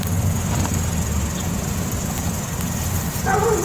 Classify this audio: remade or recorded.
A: recorded